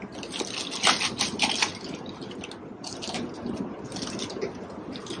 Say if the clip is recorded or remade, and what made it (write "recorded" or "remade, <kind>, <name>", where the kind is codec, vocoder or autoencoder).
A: recorded